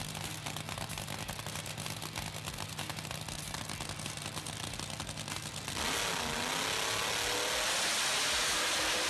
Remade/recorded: recorded